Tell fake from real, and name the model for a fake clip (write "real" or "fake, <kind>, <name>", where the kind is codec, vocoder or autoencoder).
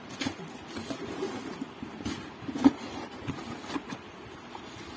fake, vocoder, BigVGAN v2